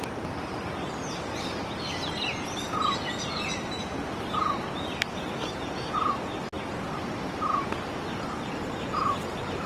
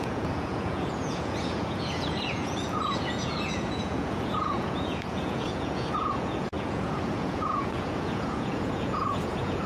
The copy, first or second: second